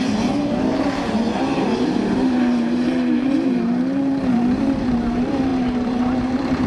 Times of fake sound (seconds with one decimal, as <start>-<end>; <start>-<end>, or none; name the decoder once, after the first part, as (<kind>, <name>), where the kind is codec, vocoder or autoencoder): 0.0-6.7 (vocoder, BigVGAN v2)